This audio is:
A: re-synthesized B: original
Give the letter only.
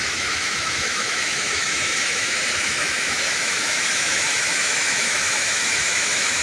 A